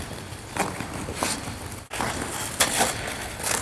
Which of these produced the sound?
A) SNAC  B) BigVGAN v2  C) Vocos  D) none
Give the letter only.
B